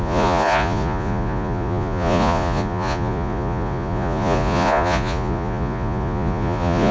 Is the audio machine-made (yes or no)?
yes